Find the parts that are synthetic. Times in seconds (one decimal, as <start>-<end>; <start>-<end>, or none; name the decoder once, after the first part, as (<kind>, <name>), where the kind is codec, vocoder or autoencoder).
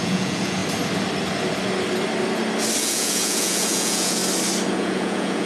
0.0-0.6 (vocoder, Vocos); 2.8-4.2; 4.7-5.5